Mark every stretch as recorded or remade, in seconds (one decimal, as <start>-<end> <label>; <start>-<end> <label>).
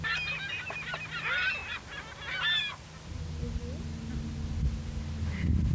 0.0-5.7 recorded